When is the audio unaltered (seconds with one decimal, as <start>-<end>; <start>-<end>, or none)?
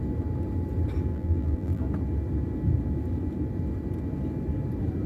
0.0-1.1; 1.8-5.1